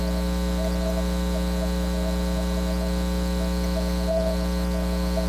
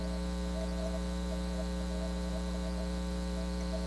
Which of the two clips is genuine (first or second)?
first